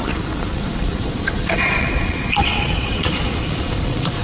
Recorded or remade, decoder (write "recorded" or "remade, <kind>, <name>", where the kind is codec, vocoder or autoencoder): remade, vocoder, Vocos